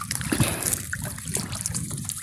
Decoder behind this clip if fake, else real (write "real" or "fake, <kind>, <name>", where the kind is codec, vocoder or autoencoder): fake, vocoder, BigVGAN v2